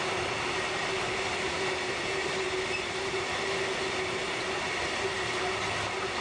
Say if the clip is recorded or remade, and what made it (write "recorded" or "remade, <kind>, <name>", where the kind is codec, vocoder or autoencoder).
recorded